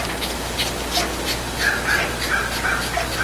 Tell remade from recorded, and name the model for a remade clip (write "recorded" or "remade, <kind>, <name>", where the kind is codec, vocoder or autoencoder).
recorded